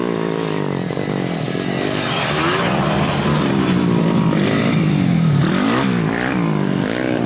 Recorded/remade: remade